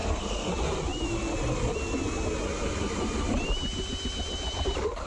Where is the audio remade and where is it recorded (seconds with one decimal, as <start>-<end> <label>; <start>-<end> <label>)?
0.0-0.5 remade; 0.5-5.1 recorded